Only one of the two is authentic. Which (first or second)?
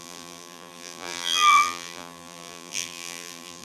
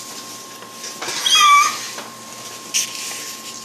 second